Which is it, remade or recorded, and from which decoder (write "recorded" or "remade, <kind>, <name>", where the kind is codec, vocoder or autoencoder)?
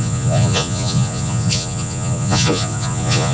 remade, vocoder, Vocos